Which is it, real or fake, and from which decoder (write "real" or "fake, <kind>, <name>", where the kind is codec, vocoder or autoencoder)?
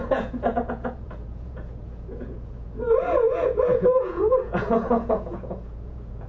fake, vocoder, Vocos